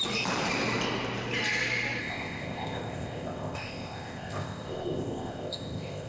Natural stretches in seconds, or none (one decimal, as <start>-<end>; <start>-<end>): 0.0-2.0